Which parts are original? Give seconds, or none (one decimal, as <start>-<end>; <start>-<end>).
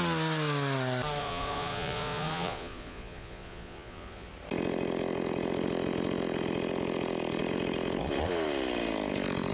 0.0-1.2; 4.3-9.5